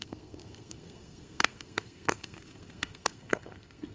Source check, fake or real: fake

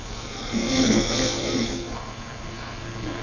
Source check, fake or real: fake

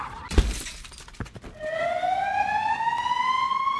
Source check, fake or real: real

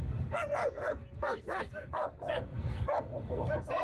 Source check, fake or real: fake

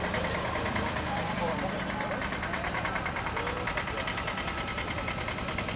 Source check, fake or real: fake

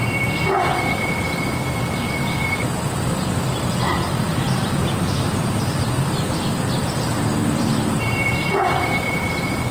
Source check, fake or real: fake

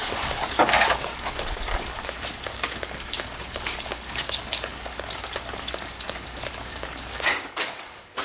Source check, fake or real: fake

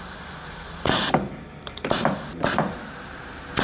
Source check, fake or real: fake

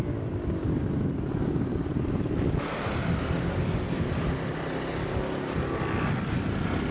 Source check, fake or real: real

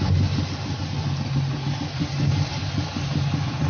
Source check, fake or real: real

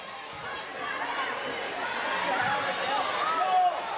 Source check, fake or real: real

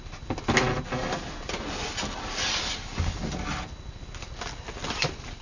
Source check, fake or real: real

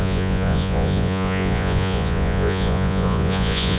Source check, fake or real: fake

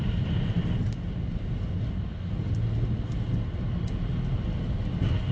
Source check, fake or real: real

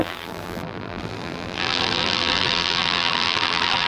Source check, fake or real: fake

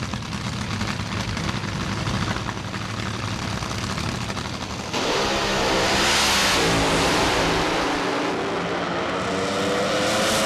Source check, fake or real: real